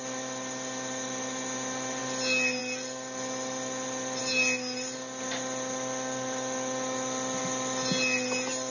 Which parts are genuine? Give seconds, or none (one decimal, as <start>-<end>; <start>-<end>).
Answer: 0.0-8.7